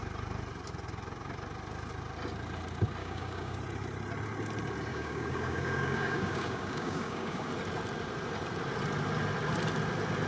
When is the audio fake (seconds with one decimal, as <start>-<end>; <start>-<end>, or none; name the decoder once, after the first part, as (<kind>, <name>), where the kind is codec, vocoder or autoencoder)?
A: 3.0-3.6 (codec, DAC); 4.9-7.5